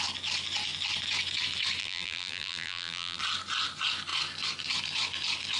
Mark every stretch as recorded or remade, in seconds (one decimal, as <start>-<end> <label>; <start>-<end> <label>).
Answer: 0.0-1.8 recorded; 1.8-3.2 remade; 3.2-5.6 recorded